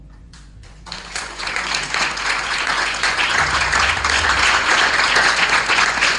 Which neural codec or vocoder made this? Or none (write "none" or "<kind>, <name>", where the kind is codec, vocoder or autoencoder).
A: vocoder, Vocos